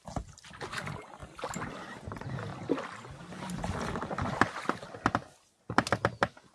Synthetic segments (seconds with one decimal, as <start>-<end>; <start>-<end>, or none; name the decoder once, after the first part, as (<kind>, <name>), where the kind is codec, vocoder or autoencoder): none

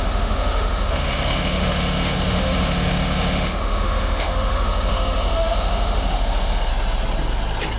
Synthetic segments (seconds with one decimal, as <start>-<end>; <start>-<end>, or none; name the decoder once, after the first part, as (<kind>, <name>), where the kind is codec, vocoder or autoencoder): 0.0-6.7 (autoencoder, DAC-VAE)

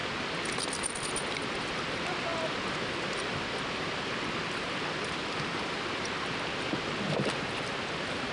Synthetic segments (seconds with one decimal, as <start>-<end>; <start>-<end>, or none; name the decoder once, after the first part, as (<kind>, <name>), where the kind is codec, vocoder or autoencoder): none